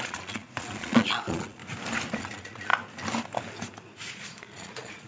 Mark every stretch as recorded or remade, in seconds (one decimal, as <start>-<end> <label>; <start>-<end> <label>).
0.0-1.6 remade; 1.6-2.2 recorded; 2.2-2.7 remade; 2.7-4.1 recorded; 4.1-5.1 remade